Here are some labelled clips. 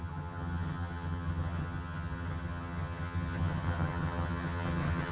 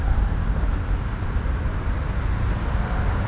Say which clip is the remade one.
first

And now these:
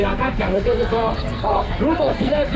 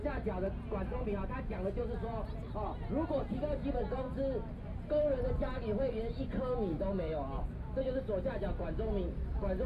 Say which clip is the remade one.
first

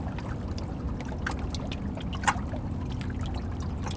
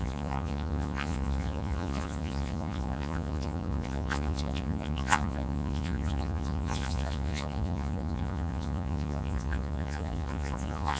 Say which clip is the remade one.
second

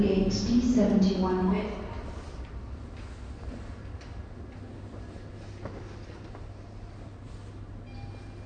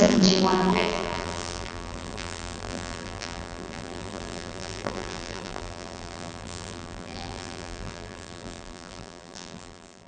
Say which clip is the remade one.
second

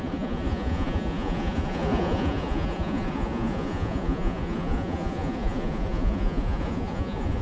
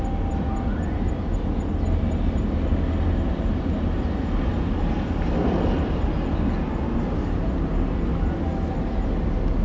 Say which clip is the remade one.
first